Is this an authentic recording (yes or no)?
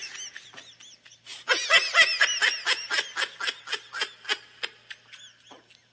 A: yes